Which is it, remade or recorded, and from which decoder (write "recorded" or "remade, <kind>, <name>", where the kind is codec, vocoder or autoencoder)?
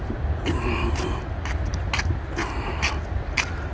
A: recorded